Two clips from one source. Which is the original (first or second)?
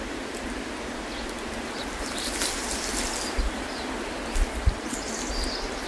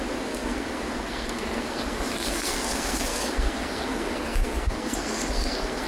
first